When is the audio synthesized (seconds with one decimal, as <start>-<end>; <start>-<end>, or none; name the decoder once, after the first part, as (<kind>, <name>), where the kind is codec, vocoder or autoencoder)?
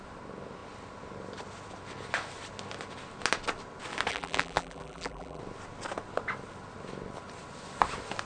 4.1-5.4 (vocoder, BigVGAN v2)